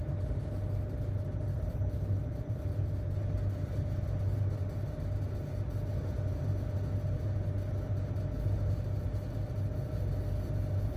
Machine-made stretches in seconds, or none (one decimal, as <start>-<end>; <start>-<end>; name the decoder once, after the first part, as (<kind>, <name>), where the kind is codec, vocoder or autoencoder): 1.5-2.7 (vocoder, BigVGAN v2)